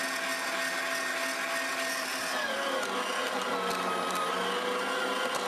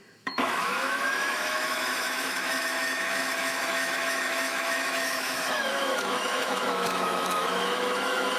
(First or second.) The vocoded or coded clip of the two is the second